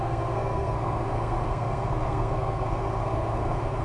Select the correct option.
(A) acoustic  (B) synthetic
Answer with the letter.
B